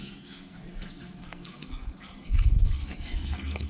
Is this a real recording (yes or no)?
no